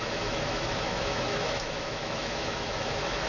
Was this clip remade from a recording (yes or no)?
yes